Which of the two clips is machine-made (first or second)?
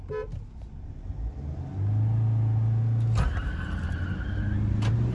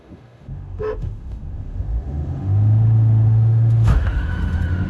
second